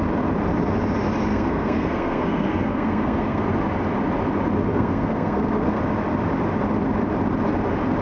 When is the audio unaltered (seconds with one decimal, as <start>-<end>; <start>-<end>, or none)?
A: 0.0-1.3; 3.5-4.7; 5.8-8.0